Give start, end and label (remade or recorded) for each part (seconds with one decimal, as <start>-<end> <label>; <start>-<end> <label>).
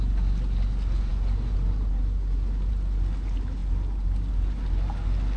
0.0-5.4 recorded